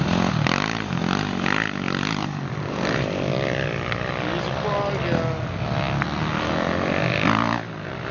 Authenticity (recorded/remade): recorded